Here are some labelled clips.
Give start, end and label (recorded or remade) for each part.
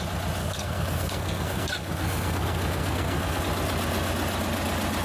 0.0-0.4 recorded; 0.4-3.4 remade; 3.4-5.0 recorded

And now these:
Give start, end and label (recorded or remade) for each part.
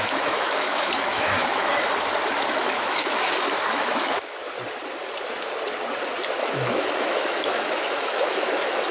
0.0-1.7 remade; 1.7-2.5 recorded; 2.5-4.4 remade; 4.4-6.4 recorded; 6.4-8.9 remade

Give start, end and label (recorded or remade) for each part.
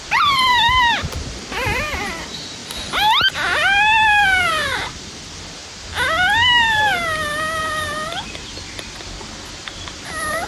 0.0-2.6 remade; 2.6-4.5 recorded; 4.5-5.6 remade; 5.6-7.6 recorded; 7.6-10.5 remade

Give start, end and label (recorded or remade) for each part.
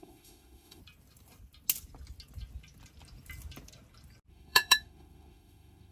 0.0-0.8 remade; 0.8-4.3 recorded; 4.3-5.9 remade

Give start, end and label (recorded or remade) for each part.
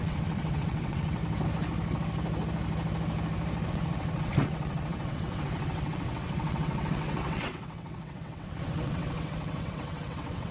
0.0-1.2 remade; 1.2-3.7 recorded; 3.7-10.5 remade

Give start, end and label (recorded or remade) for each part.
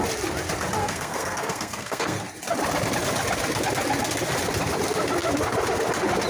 0.0-0.8 recorded; 0.8-2.2 remade; 2.2-6.3 recorded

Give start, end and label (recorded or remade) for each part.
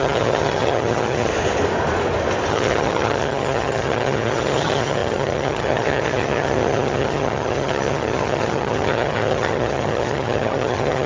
0.0-1.3 remade; 1.3-2.5 recorded; 2.5-11.1 remade